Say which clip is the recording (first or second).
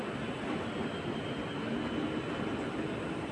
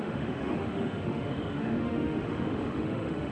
first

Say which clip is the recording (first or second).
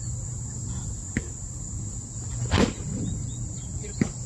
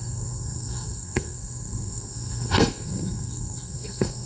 first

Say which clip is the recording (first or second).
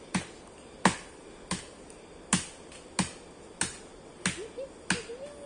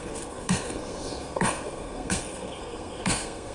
first